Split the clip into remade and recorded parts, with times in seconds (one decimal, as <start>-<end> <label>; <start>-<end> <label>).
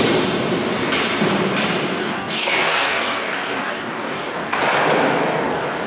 0.0-2.0 recorded; 2.0-4.6 remade; 4.6-5.2 recorded; 5.2-5.9 remade